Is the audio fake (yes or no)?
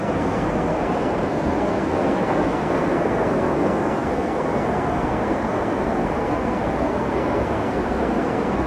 yes